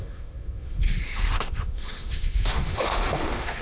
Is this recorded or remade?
remade